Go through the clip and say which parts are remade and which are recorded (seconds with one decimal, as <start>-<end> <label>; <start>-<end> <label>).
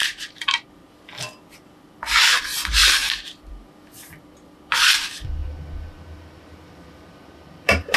0.0-0.7 remade; 0.7-2.8 recorded; 2.8-3.5 remade; 3.5-5.4 recorded; 5.4-8.0 remade